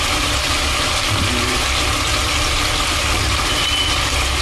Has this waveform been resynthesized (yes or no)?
no